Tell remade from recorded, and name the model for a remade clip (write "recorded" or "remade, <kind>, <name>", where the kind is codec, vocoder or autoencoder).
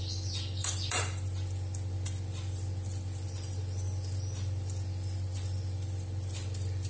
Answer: remade, vocoder, BigVGAN v2